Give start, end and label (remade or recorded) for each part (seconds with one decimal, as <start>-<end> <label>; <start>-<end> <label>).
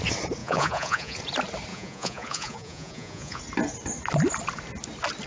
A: 0.0-0.4 recorded; 0.4-1.2 remade; 1.2-1.7 recorded; 1.7-3.4 remade; 3.4-5.3 recorded